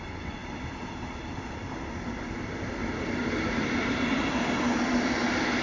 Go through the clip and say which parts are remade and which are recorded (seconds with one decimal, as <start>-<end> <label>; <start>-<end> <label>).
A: 0.0-5.6 recorded